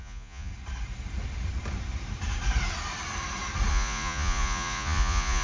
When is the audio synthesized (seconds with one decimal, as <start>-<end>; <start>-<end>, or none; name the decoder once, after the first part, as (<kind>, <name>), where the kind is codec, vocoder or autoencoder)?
0.0-0.5 (vocoder, Vocos); 3.7-5.4